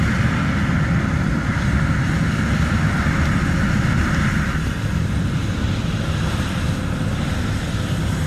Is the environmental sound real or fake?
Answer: real